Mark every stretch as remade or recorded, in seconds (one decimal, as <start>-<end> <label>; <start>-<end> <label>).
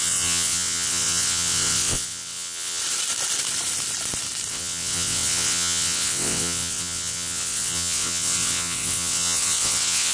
0.0-2.8 remade; 2.8-4.5 recorded; 4.5-10.1 remade